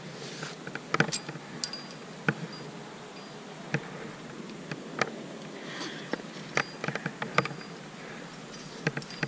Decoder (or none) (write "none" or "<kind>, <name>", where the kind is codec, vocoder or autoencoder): none